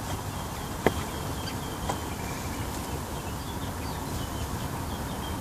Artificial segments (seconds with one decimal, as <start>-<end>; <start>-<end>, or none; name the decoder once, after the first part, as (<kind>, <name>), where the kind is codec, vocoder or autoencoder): none